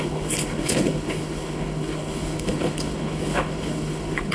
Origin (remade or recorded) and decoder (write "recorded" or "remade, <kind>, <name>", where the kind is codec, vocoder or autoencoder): remade, codec, HILCodec